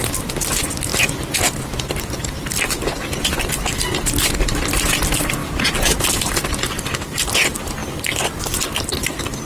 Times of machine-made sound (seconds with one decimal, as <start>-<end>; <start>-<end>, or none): none